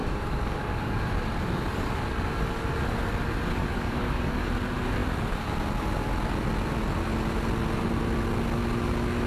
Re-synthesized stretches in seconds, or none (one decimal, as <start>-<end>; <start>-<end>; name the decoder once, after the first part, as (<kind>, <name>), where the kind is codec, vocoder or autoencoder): 0.0-1.0 (codec, DAC); 3.6-4.5